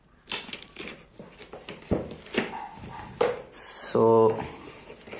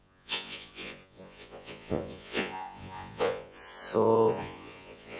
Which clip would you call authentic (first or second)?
first